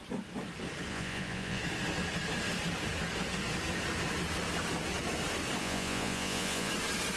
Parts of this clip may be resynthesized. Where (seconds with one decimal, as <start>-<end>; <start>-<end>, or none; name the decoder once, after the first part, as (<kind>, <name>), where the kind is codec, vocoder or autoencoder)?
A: 0.9-1.6 (vocoder, Vocos); 5.6-6.7